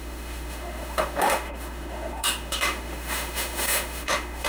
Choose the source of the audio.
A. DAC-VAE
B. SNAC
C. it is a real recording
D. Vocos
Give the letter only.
A